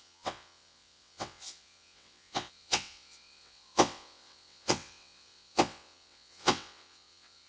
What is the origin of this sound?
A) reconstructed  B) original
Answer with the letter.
A